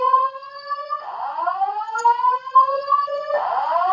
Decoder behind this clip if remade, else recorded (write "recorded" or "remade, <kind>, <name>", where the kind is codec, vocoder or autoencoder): remade, vocoder, Vocos